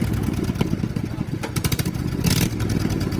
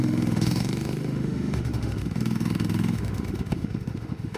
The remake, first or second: second